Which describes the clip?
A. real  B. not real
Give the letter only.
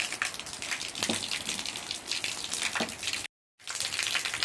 A